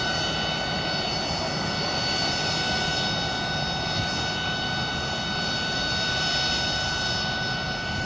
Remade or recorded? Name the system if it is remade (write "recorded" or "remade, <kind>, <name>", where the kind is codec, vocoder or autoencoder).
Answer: recorded